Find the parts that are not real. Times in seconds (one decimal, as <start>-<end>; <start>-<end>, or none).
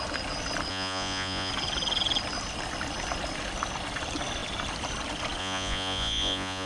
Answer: 0.7-1.5; 5.4-6.7